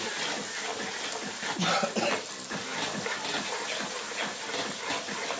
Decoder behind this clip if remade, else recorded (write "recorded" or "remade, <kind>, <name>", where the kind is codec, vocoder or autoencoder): recorded